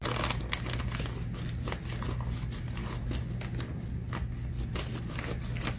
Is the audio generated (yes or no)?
no